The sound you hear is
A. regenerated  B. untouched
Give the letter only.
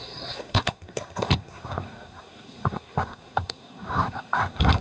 A